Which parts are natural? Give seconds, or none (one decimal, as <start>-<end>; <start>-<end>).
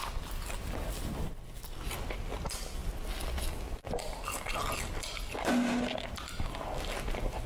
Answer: 0.0-7.5